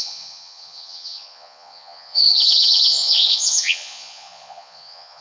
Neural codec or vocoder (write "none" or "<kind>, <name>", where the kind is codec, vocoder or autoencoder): vocoder, Vocos